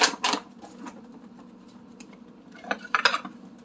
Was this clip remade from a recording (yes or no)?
no